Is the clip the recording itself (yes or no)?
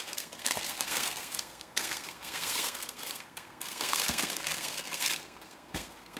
no